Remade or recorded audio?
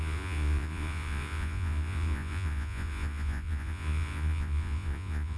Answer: remade